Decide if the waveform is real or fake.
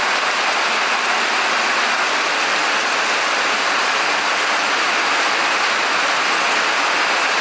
real